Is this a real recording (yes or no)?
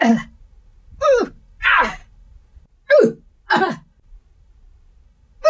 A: yes